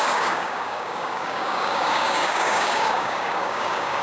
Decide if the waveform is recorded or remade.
remade